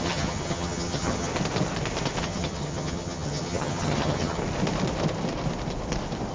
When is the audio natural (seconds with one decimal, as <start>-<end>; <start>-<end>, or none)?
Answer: 1.3-2.2; 4.4-6.3